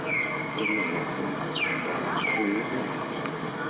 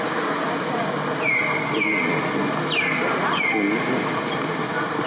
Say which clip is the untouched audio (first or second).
second